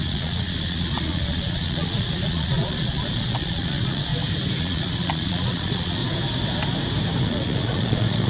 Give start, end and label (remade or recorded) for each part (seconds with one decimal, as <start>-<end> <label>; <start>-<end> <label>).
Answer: 0.0-4.1 remade; 4.1-4.6 recorded; 4.6-6.0 remade; 6.0-7.2 recorded; 7.2-8.3 remade